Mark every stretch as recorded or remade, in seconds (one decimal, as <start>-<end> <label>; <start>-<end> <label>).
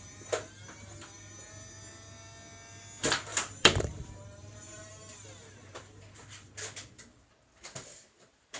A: 0.0-3.3 recorded; 3.3-4.9 remade; 4.9-5.6 recorded; 5.6-6.5 remade; 6.5-8.6 recorded